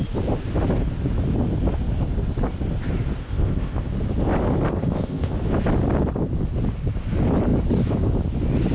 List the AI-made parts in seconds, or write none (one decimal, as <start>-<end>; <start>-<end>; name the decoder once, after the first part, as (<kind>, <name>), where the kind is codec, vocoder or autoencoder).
3.2-3.9 (codec, ZipCodec); 4.7-5.3